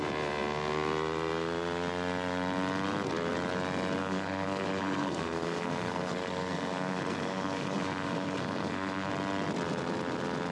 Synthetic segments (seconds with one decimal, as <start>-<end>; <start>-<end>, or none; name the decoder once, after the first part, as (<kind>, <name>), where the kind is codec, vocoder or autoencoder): 4.0-9.1 (codec, SNAC)